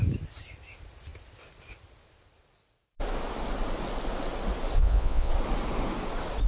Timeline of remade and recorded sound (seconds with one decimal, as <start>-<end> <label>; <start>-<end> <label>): 0.0-4.8 recorded; 4.8-5.3 remade; 5.3-6.5 recorded